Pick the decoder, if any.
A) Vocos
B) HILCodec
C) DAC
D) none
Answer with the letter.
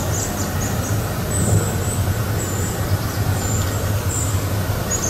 D